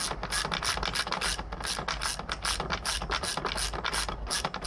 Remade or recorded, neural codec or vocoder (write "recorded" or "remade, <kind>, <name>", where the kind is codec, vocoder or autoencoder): recorded